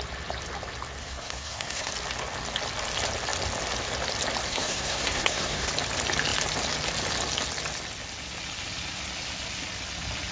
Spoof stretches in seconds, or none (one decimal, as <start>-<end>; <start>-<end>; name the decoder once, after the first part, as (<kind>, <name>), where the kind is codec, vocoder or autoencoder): 1.0-1.9 (codec, SNAC); 4.5-5.7